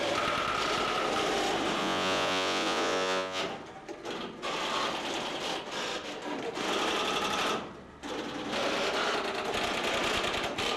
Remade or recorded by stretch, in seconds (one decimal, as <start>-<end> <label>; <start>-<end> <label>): 0.0-1.8 recorded; 1.8-3.4 remade; 3.4-10.8 recorded